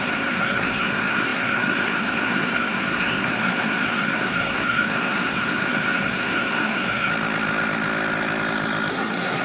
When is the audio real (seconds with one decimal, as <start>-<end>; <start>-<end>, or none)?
7.1-8.9